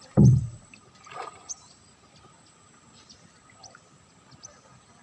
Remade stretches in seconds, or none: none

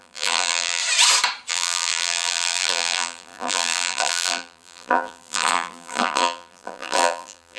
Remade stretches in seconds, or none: 0.0-0.8 (vocoder, BigVGAN v2); 1.5-7.6